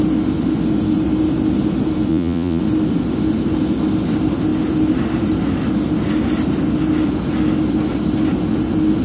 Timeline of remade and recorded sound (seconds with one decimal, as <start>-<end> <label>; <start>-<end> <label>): 0.0-2.1 recorded; 2.1-2.6 remade; 2.6-9.0 recorded